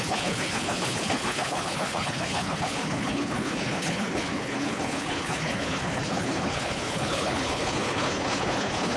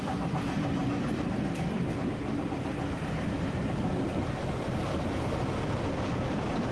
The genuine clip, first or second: second